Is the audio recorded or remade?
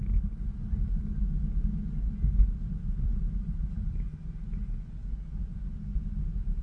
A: recorded